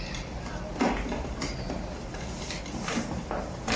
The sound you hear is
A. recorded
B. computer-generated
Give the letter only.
A